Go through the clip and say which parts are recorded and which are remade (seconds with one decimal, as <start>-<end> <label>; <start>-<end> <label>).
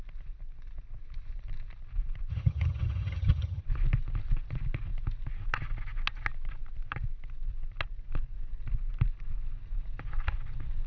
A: 0.0-2.3 recorded; 2.3-3.6 remade; 3.6-10.9 recorded